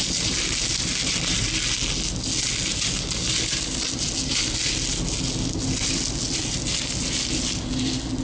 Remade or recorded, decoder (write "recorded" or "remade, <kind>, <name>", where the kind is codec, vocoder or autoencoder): recorded